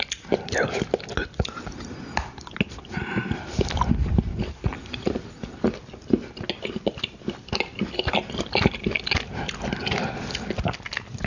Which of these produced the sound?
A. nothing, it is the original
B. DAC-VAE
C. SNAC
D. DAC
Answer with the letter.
A